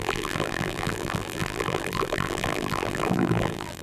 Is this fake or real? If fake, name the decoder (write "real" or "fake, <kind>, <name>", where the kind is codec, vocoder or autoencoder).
fake, vocoder, BigVGAN v2